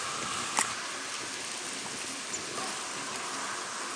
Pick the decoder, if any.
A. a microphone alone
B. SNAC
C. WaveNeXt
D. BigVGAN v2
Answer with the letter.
A